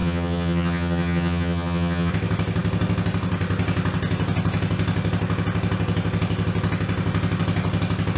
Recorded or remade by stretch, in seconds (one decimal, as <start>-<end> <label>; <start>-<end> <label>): 0.0-2.1 remade; 2.1-8.2 recorded